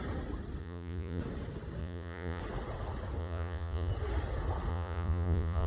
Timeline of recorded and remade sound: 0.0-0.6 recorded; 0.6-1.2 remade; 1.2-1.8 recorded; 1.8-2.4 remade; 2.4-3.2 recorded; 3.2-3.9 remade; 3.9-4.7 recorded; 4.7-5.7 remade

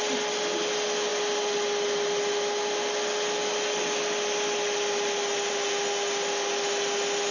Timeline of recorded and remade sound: 0.0-7.3 recorded

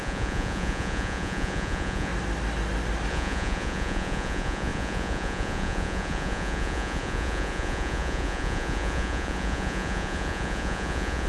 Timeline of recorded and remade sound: 0.0-2.1 remade; 2.1-3.1 recorded; 3.1-11.3 remade

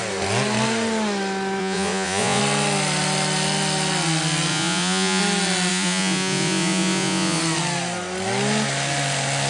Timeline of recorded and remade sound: 0.0-1.6 recorded; 1.6-2.4 remade; 2.4-4.5 recorded; 4.5-5.2 remade; 5.2-5.7 recorded; 5.7-7.4 remade; 7.4-9.5 recorded

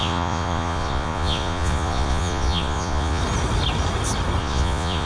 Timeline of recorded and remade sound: 0.0-3.2 remade; 3.2-4.4 recorded; 4.4-5.1 remade